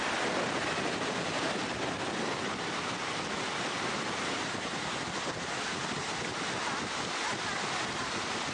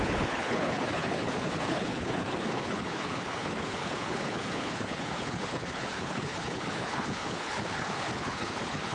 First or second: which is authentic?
first